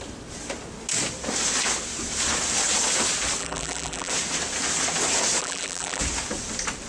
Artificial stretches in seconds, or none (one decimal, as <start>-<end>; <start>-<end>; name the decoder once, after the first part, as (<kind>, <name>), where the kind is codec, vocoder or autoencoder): 3.4-4.1 (vocoder, BigVGAN v2); 5.4-6.0